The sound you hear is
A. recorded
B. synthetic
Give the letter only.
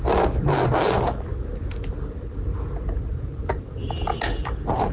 A